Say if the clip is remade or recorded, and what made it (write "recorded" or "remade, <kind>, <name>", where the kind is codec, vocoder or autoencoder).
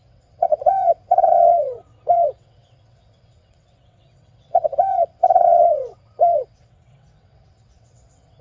remade, vocoder, WaveNeXt